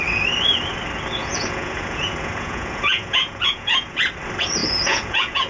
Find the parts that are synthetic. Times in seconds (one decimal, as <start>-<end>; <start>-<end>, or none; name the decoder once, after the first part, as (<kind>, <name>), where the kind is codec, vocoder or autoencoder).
1.2-4.0 (vocoder, Vocos); 4.6-5.5